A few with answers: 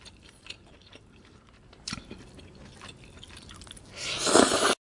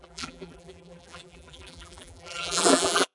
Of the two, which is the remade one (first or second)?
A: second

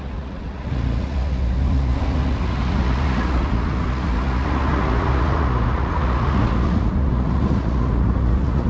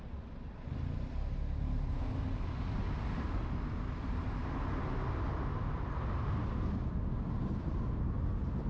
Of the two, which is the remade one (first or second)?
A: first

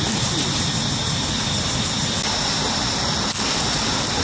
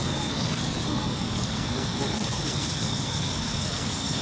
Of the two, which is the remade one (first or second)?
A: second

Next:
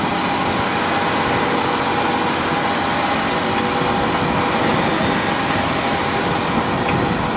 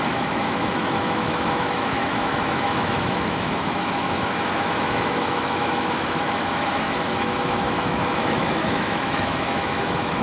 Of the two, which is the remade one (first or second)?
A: second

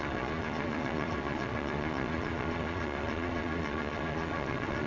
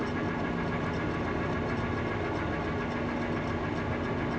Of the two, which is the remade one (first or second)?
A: first